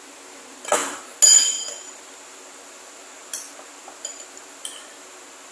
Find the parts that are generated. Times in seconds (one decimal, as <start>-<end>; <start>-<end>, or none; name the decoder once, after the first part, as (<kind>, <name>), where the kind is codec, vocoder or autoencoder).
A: none